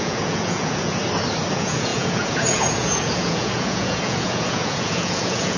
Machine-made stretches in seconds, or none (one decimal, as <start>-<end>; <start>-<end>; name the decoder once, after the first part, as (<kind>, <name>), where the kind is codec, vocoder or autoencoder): 0.0-1.0 (vocoder, Vocos); 1.5-5.6

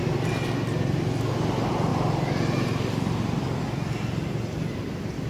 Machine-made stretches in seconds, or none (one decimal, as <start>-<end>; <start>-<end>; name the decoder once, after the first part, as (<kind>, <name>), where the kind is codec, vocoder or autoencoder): none

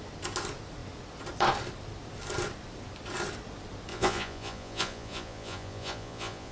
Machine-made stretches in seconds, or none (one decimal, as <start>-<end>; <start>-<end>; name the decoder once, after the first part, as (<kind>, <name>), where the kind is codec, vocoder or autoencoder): 3.9-6.5 (vocoder, Vocos)

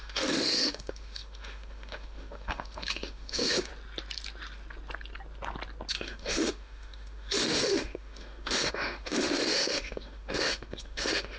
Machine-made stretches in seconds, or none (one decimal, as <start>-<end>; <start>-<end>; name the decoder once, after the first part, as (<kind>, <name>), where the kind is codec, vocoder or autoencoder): 0.0-3.7 (autoencoder, DAC-VAE); 5.9-11.4

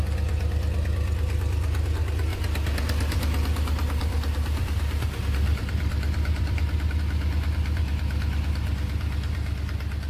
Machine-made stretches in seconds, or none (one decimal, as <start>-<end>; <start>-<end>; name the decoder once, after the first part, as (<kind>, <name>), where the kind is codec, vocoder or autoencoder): 2.3-7.0 (vocoder, BigVGAN v2)

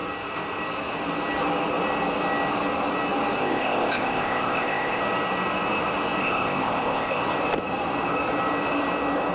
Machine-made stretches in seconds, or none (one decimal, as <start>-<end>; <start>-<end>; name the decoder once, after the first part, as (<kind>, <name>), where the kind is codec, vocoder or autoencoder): 3.4-5.0 (codec, ZipCodec); 6.2-7.2

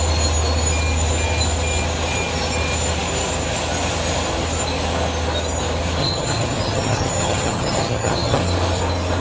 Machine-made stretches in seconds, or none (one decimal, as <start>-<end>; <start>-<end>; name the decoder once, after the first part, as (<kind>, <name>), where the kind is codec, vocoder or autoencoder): 6.0-8.4 (vocoder, HiFi-GAN)